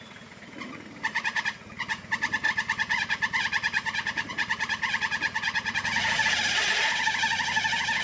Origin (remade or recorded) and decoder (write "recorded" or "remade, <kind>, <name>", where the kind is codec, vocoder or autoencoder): remade, vocoder, Vocos